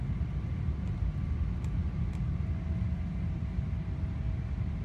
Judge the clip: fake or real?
real